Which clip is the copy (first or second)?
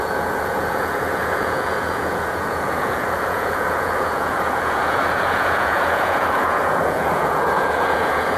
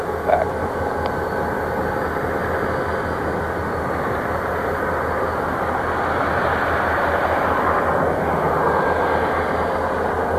first